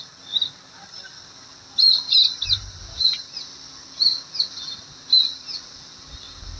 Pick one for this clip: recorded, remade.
recorded